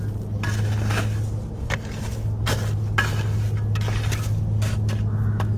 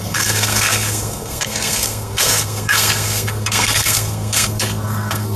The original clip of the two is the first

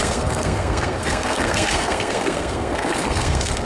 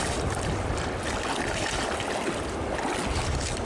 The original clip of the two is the second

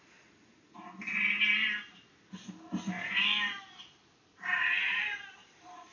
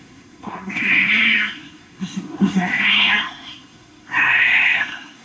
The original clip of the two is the first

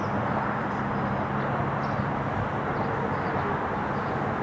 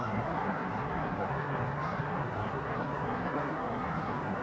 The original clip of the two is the first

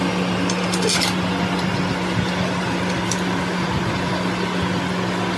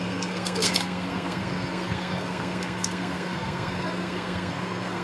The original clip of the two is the first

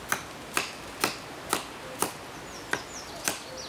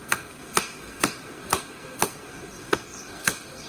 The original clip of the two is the first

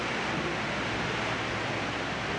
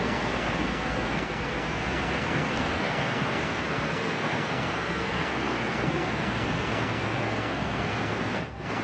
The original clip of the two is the first